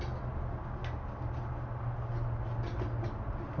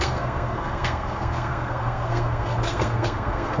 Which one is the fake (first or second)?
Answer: second